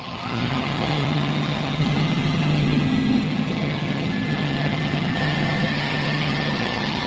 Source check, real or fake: fake